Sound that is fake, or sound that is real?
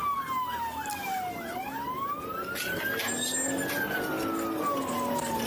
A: real